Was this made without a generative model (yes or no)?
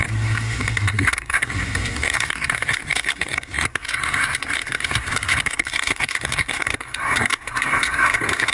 no